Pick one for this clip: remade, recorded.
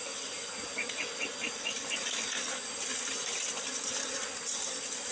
recorded